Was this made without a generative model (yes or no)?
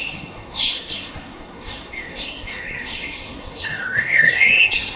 no